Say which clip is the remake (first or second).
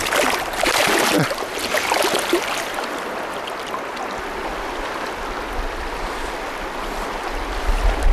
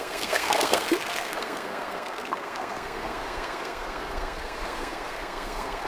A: second